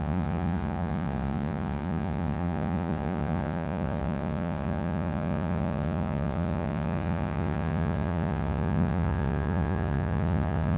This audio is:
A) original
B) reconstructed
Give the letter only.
B